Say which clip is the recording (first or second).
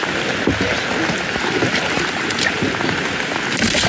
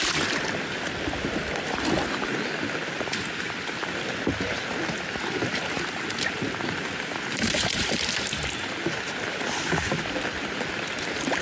first